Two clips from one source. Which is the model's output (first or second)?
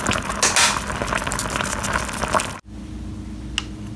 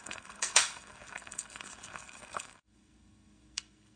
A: second